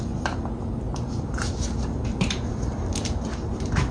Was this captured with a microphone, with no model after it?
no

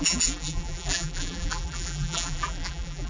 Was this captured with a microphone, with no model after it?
no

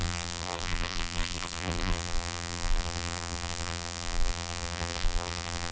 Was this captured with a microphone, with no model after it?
no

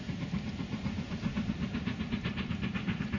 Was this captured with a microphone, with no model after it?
no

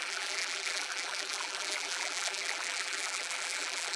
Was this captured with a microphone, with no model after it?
no